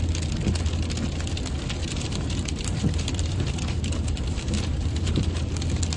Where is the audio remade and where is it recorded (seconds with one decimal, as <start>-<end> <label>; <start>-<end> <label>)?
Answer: 0.0-1.8 recorded; 1.8-5.4 remade; 5.4-6.0 recorded